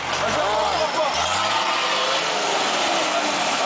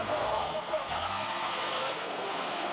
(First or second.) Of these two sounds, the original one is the first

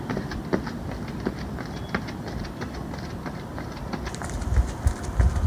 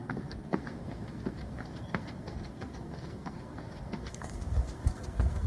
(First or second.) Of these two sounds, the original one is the first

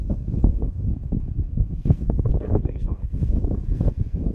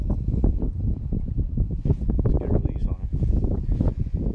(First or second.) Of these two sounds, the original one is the second